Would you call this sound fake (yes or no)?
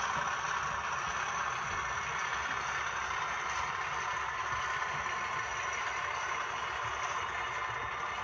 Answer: no